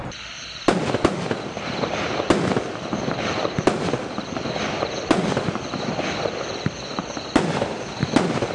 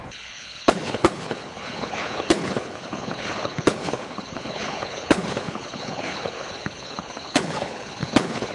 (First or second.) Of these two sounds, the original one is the first